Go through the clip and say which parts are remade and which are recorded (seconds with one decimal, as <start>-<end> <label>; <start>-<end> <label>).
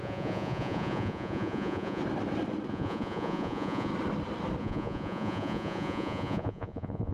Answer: 0.0-2.0 remade; 2.0-2.7 recorded; 2.7-3.9 remade; 3.9-4.6 recorded; 4.6-7.1 remade